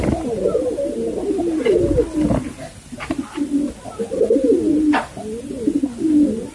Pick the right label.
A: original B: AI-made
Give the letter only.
A